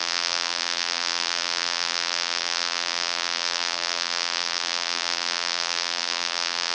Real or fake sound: fake